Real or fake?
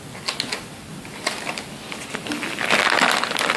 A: real